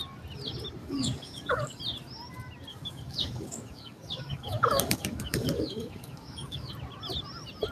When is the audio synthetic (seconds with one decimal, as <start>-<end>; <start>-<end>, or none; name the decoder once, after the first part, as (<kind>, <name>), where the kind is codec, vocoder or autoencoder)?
0.8-1.8 (codec, DAC); 2.7-6.7

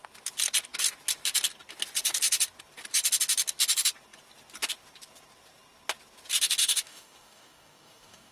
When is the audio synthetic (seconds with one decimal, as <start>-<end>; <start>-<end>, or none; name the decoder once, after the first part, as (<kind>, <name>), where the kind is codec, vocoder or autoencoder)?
6.6-8.3 (codec, DAC)

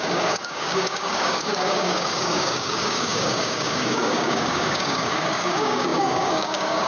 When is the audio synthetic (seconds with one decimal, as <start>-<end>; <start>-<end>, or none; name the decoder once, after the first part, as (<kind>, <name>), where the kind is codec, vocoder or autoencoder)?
0.0-6.9 (codec, DAC)

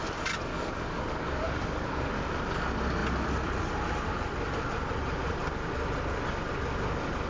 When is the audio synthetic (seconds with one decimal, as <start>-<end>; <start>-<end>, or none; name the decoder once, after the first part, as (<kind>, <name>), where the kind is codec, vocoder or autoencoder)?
0.5-2.3 (codec, DAC)

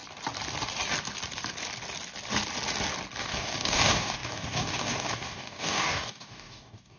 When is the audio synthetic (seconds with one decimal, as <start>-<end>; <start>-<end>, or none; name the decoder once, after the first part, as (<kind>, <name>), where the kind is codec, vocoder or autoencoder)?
3.2-7.0 (codec, DAC)